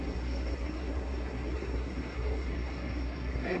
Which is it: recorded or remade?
remade